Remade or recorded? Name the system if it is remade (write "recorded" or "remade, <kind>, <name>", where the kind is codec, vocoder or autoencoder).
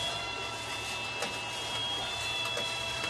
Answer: recorded